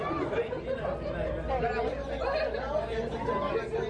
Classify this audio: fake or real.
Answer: real